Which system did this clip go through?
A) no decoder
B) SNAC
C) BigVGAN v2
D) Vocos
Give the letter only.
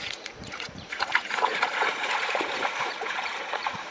D